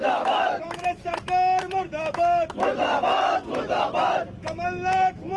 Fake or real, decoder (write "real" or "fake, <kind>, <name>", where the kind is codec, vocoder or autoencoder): fake, autoencoder, DAC-VAE